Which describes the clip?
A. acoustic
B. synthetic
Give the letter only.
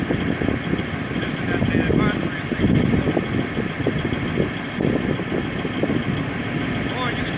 A